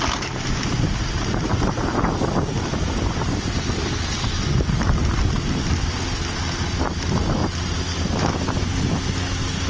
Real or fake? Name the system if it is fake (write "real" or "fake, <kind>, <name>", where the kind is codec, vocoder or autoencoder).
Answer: real